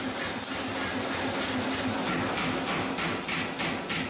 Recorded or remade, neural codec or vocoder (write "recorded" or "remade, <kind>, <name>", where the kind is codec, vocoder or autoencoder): recorded